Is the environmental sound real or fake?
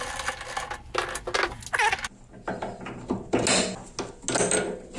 real